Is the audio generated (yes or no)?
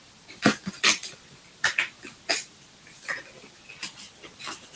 no